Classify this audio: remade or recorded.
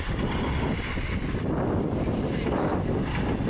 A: remade